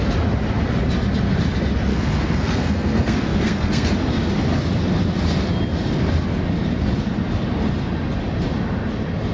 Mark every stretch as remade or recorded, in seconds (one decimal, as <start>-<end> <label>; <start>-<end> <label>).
0.0-1.9 recorded; 1.9-3.9 remade; 3.9-9.3 recorded